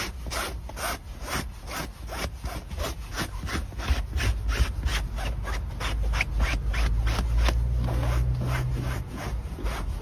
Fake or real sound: real